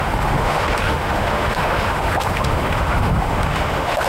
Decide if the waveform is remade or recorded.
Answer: remade